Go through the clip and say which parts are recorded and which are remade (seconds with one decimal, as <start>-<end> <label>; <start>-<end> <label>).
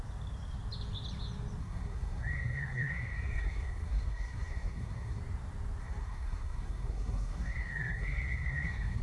0.0-1.6 recorded; 1.6-5.2 remade; 5.2-5.8 recorded; 5.8-9.0 remade